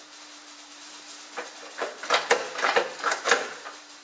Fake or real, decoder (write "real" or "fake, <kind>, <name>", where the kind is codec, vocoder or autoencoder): fake, vocoder, BigVGAN v2